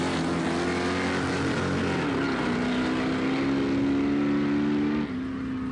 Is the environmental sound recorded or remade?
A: recorded